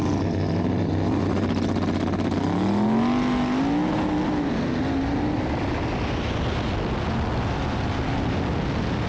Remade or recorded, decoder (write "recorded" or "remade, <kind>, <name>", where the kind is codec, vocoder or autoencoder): recorded